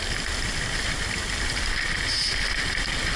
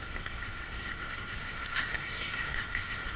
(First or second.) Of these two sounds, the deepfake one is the second